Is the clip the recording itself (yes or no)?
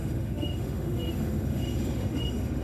no